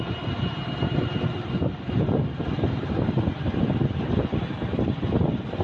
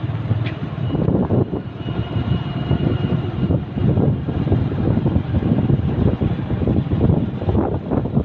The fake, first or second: second